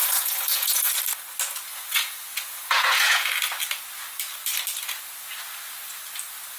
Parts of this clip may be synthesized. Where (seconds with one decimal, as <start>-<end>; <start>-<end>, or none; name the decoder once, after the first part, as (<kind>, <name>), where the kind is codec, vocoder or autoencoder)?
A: 0.0-0.9 (vocoder, Vocos); 1.7-3.3

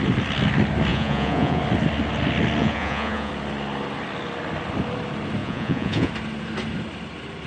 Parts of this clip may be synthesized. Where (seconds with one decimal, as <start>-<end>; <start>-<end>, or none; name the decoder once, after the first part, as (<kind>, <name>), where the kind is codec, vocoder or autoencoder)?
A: 0.9-1.6 (vocoder, Vocos); 2.6-3.3; 5.4-6.1

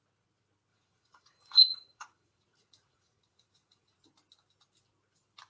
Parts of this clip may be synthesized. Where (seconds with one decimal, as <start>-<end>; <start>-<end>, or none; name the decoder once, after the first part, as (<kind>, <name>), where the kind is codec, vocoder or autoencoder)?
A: 0.7-4.0 (vocoder, Vocos)

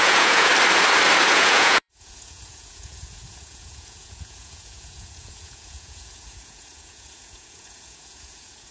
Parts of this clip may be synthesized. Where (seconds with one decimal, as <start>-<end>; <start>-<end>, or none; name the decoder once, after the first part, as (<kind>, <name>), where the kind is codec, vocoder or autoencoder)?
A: 0.0-0.5 (vocoder, Vocos); 1.3-8.7

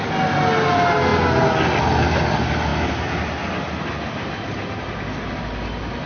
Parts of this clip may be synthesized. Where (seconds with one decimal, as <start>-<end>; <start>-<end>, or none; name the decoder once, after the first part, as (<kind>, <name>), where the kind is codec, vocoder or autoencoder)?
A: none

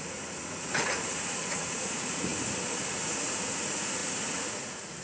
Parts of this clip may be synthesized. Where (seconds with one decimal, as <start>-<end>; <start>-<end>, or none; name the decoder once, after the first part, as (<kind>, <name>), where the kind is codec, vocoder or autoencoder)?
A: 0.0-2.3 (vocoder, Vocos); 2.9-5.0